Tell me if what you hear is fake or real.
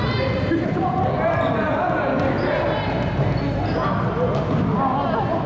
real